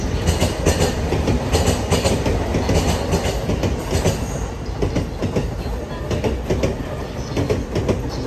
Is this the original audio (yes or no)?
yes